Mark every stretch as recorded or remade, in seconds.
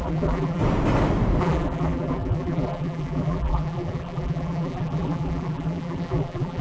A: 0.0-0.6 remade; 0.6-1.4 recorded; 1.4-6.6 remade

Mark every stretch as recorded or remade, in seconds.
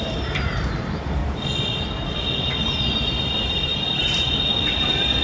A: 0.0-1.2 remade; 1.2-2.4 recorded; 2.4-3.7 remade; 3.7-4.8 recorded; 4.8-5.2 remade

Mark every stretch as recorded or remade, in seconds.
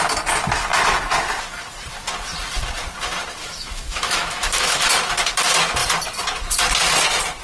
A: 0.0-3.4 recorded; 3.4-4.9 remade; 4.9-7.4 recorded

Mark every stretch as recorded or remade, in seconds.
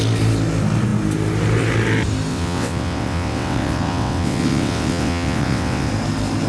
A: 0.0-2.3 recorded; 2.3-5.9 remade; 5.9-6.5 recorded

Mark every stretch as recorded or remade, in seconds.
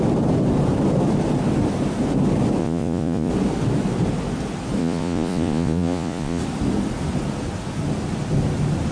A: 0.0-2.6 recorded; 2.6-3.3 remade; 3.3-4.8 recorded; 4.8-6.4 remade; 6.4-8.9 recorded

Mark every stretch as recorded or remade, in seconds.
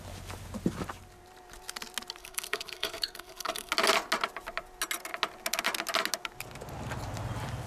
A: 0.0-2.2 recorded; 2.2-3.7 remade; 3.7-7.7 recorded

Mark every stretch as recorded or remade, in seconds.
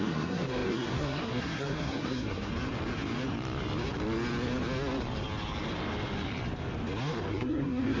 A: 0.0-2.5 remade; 2.5-7.3 recorded; 7.3-8.0 remade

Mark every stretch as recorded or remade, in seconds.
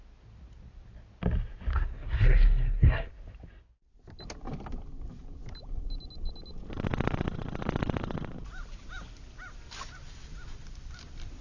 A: 0.0-1.7 recorded; 1.7-3.1 remade; 3.1-11.4 recorded